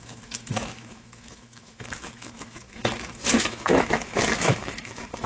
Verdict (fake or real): fake